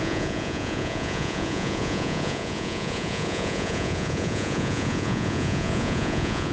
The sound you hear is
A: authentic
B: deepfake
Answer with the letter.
B